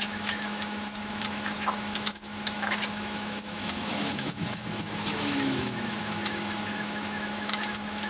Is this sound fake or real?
fake